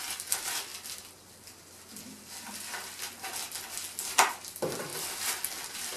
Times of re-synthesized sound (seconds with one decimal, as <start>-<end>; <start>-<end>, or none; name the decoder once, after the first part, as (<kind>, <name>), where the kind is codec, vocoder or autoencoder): none